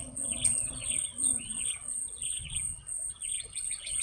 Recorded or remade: remade